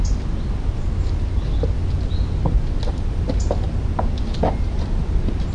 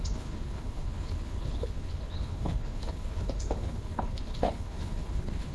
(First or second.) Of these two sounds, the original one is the first